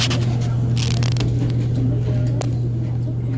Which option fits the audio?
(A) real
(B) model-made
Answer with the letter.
A